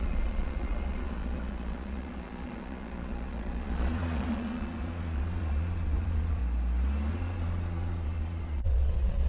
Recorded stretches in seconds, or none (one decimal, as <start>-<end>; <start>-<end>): 6.4-7.1